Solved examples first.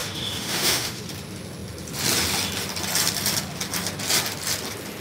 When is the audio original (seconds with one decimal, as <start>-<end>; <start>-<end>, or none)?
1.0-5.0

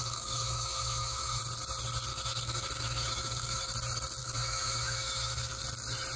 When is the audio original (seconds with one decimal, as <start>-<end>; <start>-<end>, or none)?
1.4-2.1; 3.7-4.2; 5.6-6.2

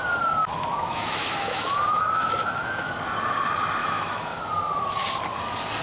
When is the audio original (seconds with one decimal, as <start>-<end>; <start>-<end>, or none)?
0.0-0.4; 3.0-3.8; 4.4-5.8

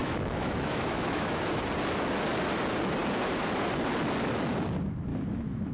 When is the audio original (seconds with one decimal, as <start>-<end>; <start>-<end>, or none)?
1.6-5.1